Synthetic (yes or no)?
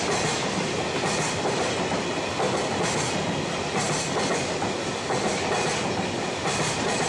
no